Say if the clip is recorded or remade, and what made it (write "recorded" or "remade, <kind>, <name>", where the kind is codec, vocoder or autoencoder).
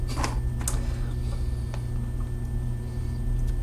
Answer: recorded